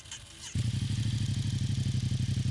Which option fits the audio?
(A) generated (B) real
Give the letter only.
B